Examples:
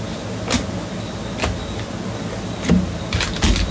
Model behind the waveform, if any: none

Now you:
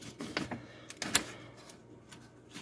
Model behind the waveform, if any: none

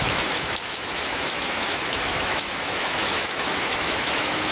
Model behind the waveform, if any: autoencoder, DAC-VAE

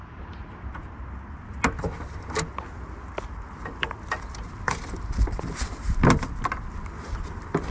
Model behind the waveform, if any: none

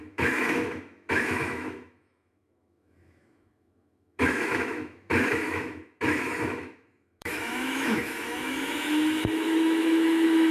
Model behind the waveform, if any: autoencoder, DAC-VAE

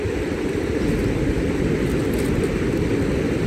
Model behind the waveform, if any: none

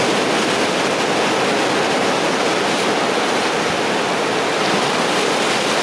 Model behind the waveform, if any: none